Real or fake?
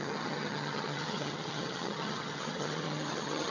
fake